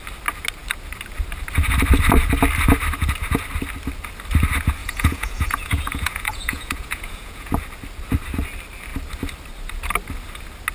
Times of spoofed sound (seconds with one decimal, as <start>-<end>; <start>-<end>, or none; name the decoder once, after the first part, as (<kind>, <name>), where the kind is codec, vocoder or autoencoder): 4.8-7.5 (vocoder, Vocos)